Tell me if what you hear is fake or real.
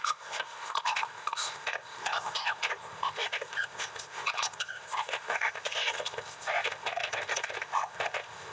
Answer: fake